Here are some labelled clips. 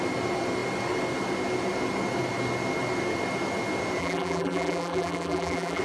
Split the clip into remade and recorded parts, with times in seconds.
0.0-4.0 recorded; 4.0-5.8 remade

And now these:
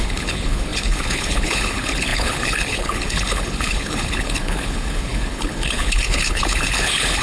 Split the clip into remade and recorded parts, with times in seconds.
0.0-7.2 remade

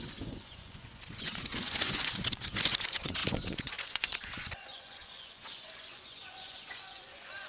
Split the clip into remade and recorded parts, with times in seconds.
0.0-7.5 remade

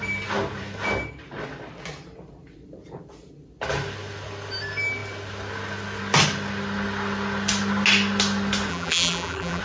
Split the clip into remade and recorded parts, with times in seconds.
0.0-8.7 recorded; 8.7-9.6 remade

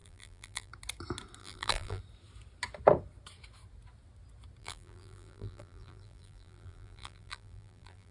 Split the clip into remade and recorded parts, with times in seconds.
0.0-0.7 remade; 0.7-1.4 recorded; 1.4-2.0 remade; 2.0-4.6 recorded; 4.6-8.1 remade

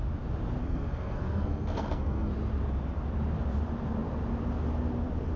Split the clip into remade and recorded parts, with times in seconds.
0.0-0.6 recorded; 0.6-2.3 remade; 2.3-5.4 recorded